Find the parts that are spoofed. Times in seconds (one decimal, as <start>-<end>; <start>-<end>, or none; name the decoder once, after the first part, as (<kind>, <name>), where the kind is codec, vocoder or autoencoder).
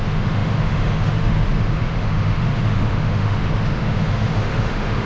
0.0-5.1 (autoencoder, DAC-VAE)